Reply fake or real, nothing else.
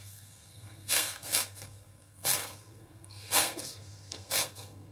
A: fake